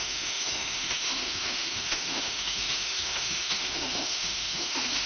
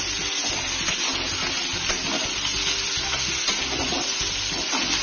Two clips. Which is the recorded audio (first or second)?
second